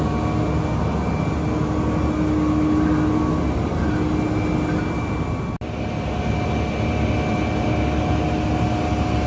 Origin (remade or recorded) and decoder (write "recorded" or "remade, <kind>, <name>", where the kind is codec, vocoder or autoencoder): recorded